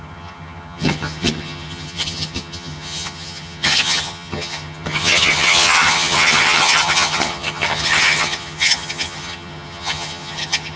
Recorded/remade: remade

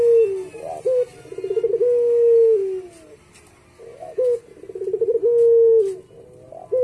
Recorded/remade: recorded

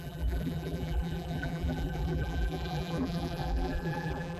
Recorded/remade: remade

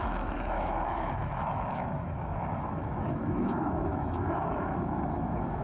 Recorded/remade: remade